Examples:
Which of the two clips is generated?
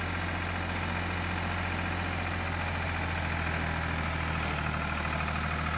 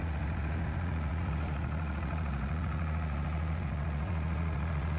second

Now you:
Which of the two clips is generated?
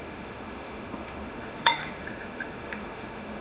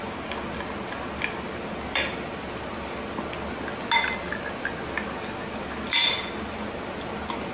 first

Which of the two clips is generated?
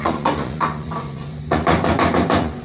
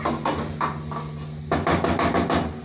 first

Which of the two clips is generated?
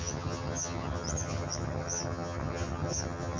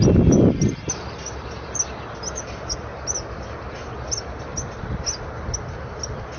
first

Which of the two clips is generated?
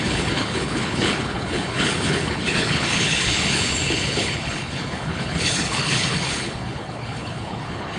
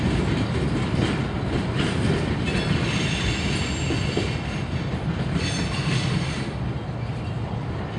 first